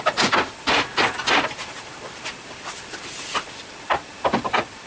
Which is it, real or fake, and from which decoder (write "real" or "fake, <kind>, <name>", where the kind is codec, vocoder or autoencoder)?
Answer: real